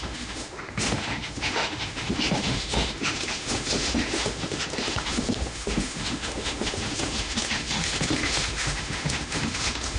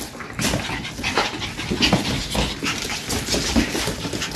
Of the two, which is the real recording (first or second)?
second